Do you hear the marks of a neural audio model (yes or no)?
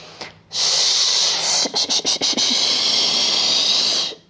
no